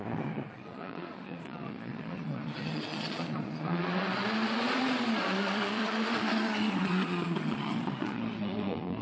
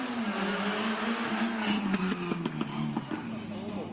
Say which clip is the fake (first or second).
first